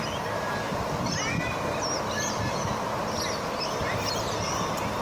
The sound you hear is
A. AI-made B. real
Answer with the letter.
B